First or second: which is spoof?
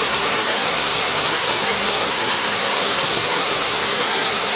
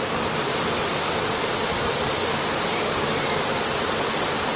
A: first